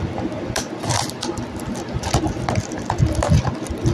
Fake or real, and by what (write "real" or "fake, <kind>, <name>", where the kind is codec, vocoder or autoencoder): real